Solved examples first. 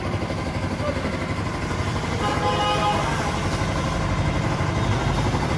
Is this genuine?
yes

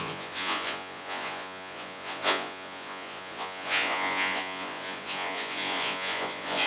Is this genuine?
no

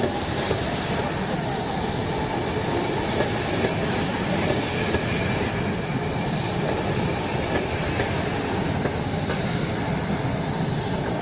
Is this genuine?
yes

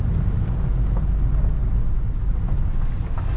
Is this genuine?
yes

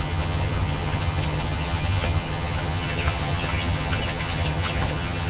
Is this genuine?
no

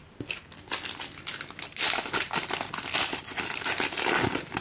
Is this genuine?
yes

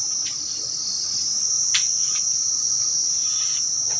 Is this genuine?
yes